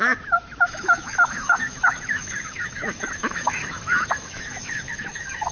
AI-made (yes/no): yes